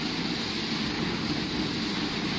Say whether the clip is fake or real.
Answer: real